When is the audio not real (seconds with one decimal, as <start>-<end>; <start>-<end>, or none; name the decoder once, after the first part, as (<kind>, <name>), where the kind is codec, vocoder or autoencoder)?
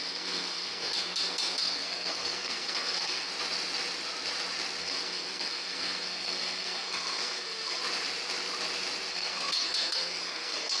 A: 0.0-3.3 (codec, SNAC); 4.8-7.8; 9.1-10.8